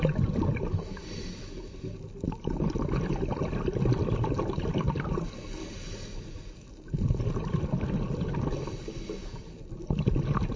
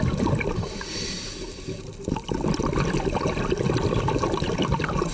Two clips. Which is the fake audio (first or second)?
second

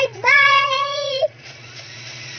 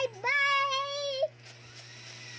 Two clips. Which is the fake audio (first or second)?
first